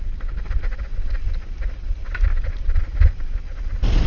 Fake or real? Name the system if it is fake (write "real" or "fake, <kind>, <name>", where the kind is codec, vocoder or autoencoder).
real